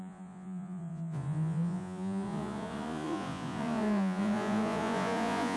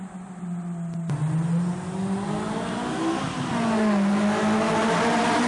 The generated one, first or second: first